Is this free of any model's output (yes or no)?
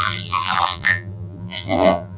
no